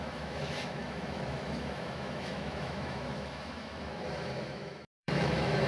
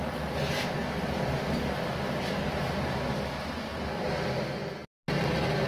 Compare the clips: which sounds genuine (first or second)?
second